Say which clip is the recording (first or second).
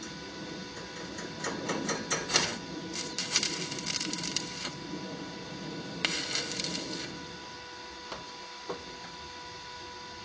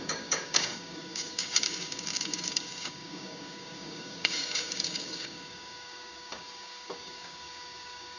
first